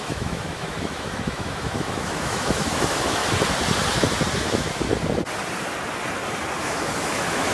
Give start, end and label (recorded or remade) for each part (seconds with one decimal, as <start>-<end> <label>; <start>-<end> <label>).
0.0-3.2 remade; 3.2-4.4 recorded; 4.4-4.9 remade; 4.9-6.6 recorded; 6.6-7.5 remade